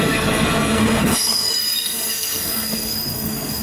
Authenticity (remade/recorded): remade